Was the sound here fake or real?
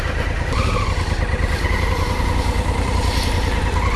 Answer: real